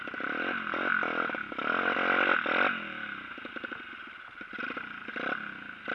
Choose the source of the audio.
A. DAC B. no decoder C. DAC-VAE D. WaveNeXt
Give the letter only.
B